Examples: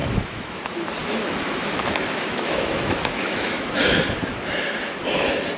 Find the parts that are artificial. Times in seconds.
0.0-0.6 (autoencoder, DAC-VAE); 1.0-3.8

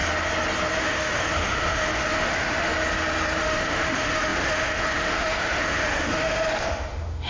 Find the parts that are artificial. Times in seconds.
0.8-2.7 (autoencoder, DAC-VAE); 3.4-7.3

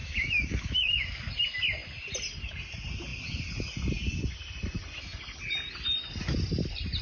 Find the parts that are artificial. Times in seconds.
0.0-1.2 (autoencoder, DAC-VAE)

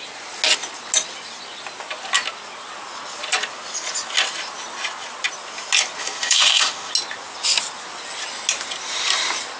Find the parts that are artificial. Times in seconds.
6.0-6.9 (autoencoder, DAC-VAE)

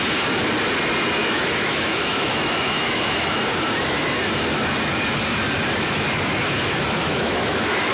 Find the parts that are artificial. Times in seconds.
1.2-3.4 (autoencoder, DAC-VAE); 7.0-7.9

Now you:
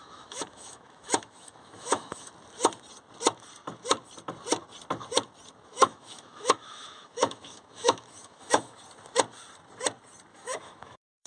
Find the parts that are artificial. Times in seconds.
0.0-2.3 (autoencoder, DAC-VAE); 5.7-8.8; 10.3-11.3

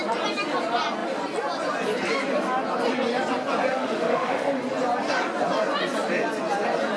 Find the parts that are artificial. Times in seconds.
3.7-4.6 (autoencoder, DAC-VAE)

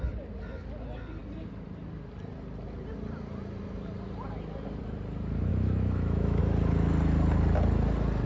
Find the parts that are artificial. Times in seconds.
5.5-6.4 (autoencoder, DAC-VAE)